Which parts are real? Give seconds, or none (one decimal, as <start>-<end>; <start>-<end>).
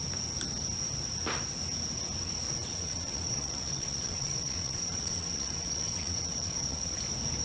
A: 0.0-2.6; 7.0-7.4